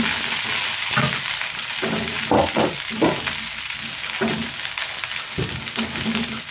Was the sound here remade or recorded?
recorded